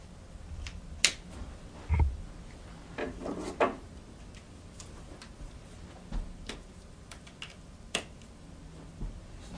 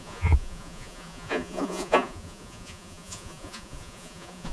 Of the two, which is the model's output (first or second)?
second